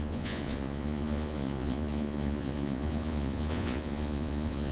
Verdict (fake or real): fake